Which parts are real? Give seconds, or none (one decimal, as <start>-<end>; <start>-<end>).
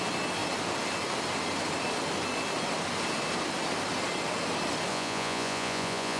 0.0-4.9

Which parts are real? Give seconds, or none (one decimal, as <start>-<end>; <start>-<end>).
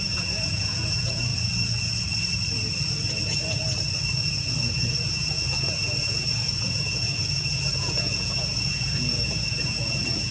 1.3-4.3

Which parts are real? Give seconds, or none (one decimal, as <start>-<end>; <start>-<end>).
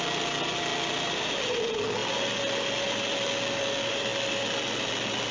0.0-0.7; 1.3-5.3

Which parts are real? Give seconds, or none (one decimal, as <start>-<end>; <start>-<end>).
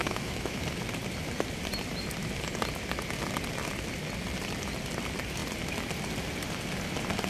0.6-7.3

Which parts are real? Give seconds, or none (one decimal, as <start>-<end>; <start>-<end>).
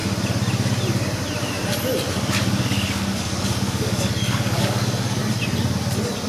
0.0-2.1; 5.2-6.3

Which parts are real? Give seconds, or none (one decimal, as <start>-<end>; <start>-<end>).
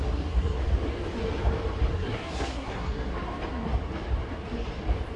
0.6-1.9; 3.1-5.2